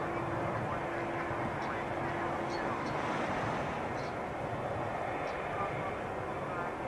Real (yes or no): yes